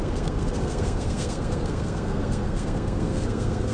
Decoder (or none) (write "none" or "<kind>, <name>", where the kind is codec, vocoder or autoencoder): codec, SNAC